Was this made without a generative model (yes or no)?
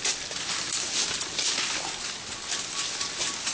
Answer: yes